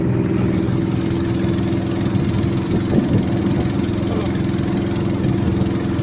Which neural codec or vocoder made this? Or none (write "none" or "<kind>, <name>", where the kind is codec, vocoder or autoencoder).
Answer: none